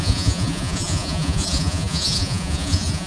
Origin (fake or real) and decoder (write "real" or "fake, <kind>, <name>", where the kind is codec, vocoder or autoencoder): fake, vocoder, Vocos